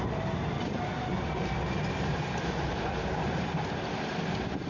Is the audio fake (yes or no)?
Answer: no